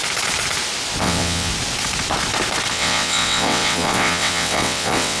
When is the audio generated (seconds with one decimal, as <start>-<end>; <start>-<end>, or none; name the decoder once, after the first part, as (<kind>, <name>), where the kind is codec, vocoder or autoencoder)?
1.0-1.5 (vocoder, WaveNeXt); 2.7-5.2

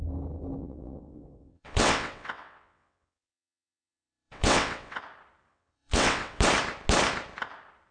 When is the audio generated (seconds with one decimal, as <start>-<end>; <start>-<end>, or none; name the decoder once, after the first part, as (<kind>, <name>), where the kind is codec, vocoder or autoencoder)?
0.6-5.0 (vocoder, WaveNeXt); 5.5-6.4